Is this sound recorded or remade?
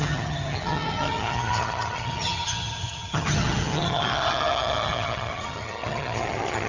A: remade